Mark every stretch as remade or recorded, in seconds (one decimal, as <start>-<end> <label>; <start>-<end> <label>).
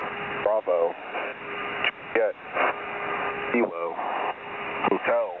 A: 0.0-5.4 recorded